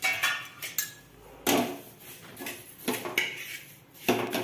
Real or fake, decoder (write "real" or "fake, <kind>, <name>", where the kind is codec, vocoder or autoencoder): real